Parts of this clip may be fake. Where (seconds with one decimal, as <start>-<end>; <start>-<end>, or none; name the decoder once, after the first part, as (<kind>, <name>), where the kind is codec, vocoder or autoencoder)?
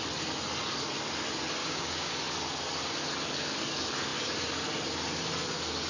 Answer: 1.6-2.1 (codec, DAC)